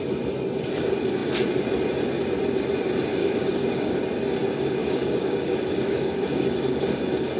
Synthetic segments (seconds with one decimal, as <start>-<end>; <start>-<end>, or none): 3.2-4.0; 4.8-7.0

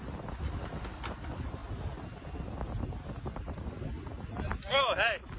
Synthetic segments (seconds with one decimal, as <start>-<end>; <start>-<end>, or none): none

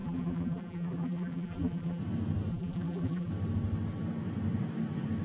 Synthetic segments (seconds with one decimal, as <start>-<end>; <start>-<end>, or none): 0.0-2.0; 2.5-3.3

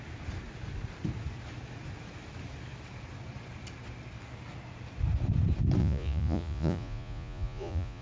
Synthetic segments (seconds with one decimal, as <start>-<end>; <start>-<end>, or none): 5.8-8.0

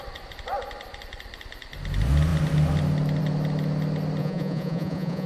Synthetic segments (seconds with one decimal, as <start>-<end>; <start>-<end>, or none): 4.2-5.3